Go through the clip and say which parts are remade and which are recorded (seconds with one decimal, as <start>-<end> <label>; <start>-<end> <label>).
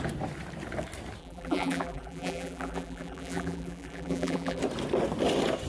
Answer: 0.0-1.2 recorded; 1.2-4.6 remade; 4.6-5.7 recorded